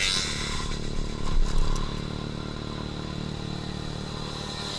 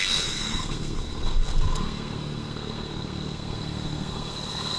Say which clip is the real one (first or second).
first